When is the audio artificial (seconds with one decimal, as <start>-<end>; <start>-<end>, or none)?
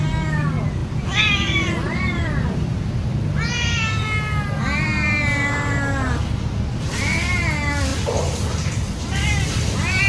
0.8-3.1; 7.9-9.0